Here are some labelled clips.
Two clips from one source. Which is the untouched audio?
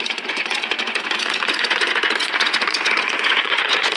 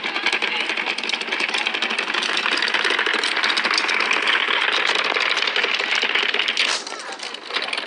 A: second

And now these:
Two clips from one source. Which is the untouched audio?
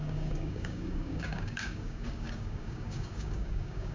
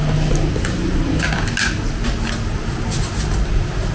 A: second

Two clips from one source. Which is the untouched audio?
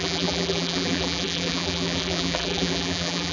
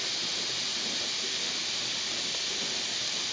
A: second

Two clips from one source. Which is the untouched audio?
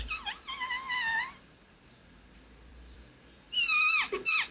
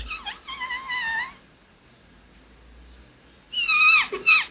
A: second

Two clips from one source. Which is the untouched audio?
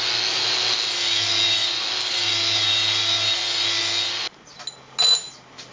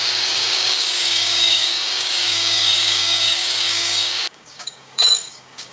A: first